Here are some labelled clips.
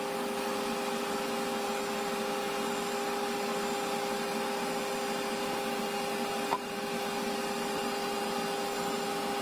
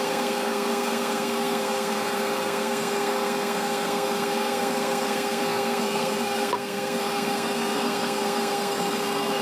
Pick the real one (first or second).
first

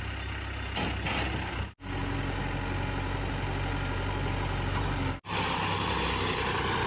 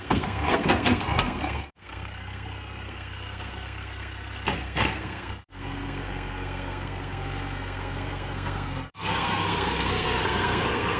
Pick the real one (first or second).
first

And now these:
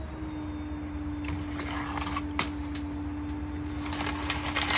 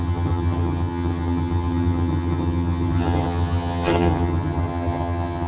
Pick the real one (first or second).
first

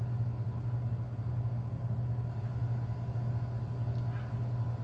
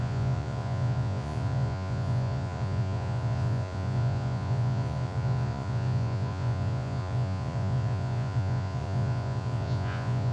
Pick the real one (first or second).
first